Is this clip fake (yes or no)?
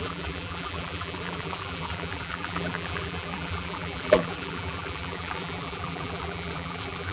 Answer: yes